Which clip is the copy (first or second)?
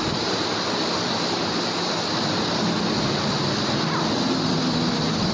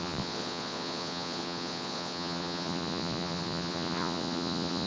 second